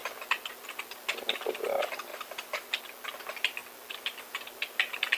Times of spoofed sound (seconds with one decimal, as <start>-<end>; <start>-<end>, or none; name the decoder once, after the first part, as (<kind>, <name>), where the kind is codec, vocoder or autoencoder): 2.1-2.8 (vocoder, BigVGAN v2)